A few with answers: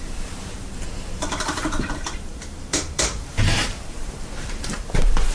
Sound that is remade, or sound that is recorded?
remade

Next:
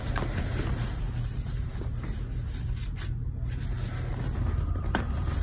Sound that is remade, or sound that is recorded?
remade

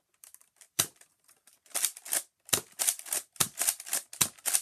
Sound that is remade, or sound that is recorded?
remade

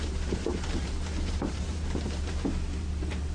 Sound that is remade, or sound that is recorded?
remade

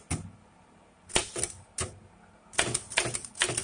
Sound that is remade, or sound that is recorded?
recorded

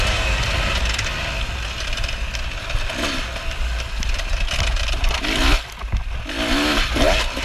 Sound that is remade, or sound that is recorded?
recorded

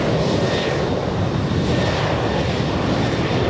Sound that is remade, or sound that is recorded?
recorded